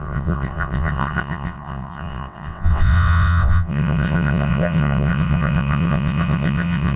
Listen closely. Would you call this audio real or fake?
fake